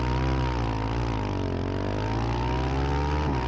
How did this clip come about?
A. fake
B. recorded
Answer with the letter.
B